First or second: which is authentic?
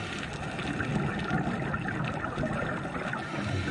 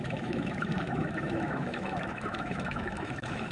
first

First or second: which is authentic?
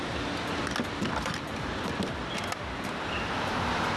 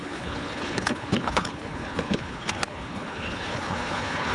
first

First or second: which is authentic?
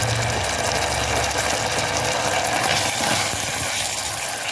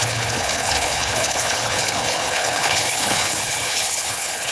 first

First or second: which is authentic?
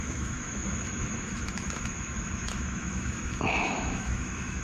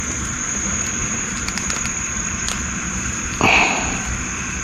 second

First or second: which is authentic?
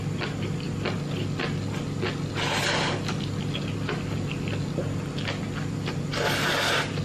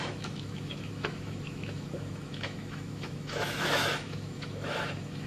first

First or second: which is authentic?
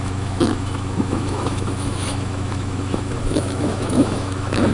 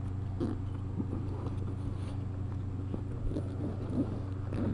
second